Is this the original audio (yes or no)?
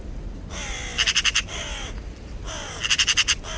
yes